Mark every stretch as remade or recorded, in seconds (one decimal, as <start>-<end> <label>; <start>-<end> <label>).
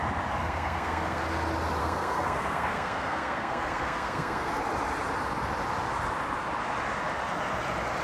0.0-0.4 recorded; 0.4-1.2 remade; 1.2-1.8 recorded; 1.8-4.5 remade; 4.5-8.0 recorded